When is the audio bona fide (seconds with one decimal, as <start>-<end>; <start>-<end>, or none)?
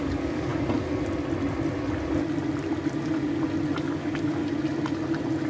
0.5-3.8; 4.4-5.5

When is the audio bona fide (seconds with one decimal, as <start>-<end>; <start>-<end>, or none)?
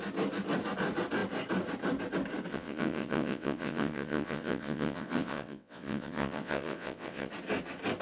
0.0-2.5; 7.3-8.0